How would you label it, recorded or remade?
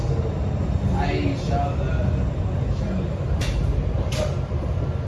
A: recorded